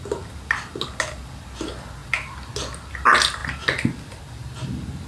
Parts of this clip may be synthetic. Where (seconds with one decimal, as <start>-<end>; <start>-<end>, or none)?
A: none

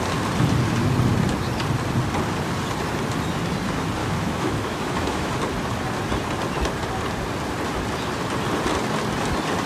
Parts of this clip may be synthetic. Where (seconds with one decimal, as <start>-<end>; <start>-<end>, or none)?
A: 4.0-5.3

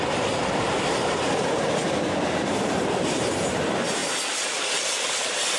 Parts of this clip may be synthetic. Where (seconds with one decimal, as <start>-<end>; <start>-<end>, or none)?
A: 0.0-4.0; 4.8-5.6

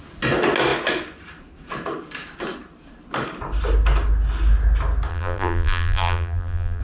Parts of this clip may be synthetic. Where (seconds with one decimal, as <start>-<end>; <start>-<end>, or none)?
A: 5.1-6.8

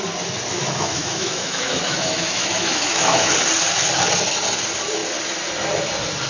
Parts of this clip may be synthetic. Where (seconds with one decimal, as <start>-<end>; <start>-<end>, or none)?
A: 0.5-3.3

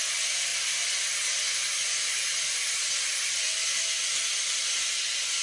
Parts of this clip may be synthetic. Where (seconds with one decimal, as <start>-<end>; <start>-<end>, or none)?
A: none

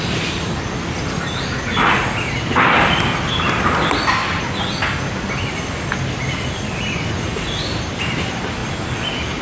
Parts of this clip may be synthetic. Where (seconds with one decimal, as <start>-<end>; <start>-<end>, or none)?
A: none

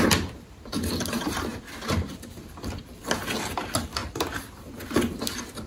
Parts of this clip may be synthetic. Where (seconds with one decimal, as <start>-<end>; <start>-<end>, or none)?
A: none